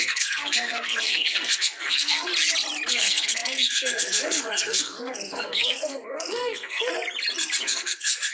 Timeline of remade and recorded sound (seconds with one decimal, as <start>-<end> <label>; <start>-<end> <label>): 0.0-2.3 remade; 2.3-2.9 recorded; 2.9-6.9 remade; 6.9-7.6 recorded; 7.6-8.3 remade

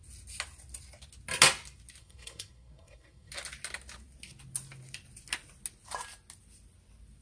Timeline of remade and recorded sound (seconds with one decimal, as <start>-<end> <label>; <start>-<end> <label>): 0.0-2.0 recorded; 2.0-3.3 remade; 3.3-7.2 recorded

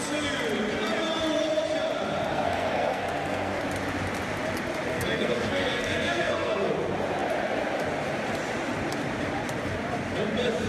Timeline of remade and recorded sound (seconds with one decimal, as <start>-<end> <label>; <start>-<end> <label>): 0.0-2.3 recorded; 2.3-3.6 remade; 3.6-4.9 recorded; 4.9-6.7 remade; 6.7-10.7 recorded

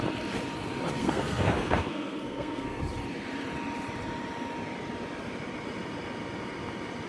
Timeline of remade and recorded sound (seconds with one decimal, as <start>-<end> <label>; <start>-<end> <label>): 0.0-1.0 recorded; 1.0-2.8 remade; 2.8-7.1 recorded

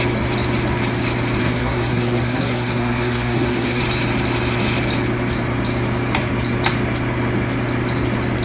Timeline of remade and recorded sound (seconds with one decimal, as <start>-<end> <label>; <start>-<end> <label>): 0.0-1.4 recorded; 1.4-3.8 remade; 3.8-8.4 recorded

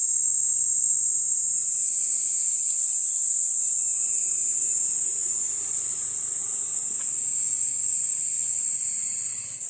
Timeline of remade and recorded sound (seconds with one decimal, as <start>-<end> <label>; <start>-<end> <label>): 0.0-9.7 recorded